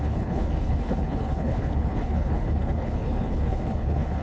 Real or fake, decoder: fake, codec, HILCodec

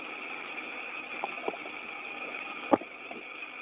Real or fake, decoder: real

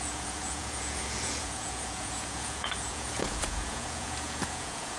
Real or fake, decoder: fake, vocoder, Vocos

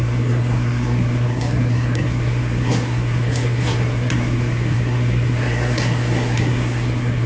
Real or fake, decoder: fake, codec, SNAC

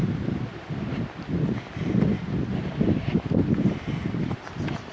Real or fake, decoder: real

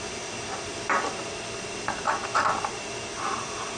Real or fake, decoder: real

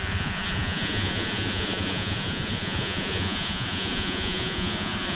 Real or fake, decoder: fake, vocoder, Vocos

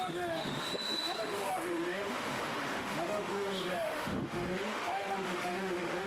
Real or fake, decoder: fake, autoencoder, DAC-VAE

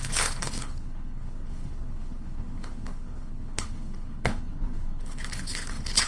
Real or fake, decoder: fake, codec, HILCodec